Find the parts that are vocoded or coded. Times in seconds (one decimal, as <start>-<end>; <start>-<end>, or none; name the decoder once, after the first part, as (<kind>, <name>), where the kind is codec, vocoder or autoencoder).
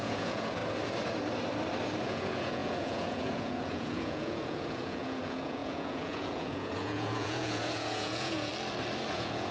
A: 0.0-0.6 (vocoder, Vocos); 2.0-8.5; 9.1-9.5